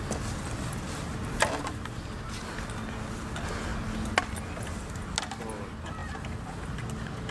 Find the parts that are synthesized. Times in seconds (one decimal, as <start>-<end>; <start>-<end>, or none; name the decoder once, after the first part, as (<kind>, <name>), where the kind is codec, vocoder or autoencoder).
1.1-2.4 (vocoder, BigVGAN v2)